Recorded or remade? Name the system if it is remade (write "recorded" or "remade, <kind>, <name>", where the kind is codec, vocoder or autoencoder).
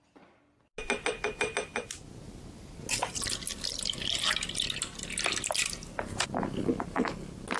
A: recorded